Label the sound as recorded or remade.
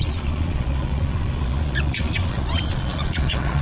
remade